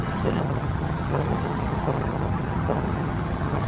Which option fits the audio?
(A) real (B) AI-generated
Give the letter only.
B